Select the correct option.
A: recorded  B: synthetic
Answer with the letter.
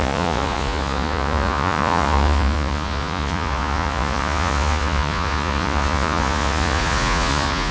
B